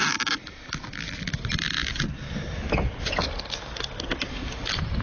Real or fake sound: real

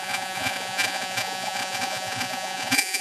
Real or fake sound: fake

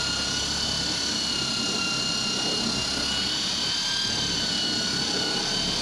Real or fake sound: real